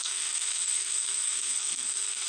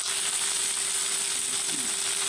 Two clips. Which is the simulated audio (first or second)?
first